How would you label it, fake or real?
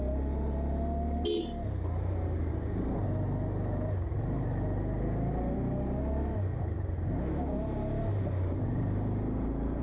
real